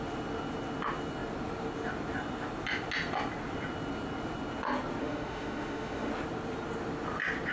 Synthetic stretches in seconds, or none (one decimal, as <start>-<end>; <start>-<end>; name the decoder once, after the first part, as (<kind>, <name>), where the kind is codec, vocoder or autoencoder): 5.0-6.1 (autoencoder, DAC-VAE)